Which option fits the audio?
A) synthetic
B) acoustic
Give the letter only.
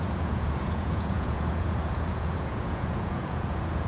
A